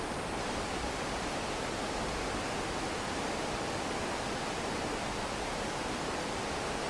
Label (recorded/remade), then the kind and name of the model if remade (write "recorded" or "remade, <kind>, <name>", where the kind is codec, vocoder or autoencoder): recorded